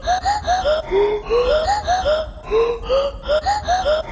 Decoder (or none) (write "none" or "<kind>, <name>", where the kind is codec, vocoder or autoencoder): none